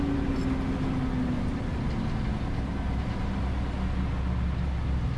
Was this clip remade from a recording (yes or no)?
no